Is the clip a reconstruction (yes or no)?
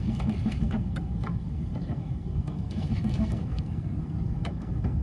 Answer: yes